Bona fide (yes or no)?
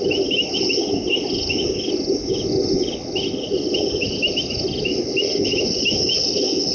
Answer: no